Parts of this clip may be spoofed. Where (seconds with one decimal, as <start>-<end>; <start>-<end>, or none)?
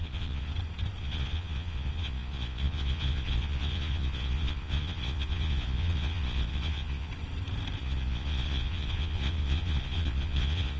0.0-0.5; 1.0-7.1; 7.8-10.8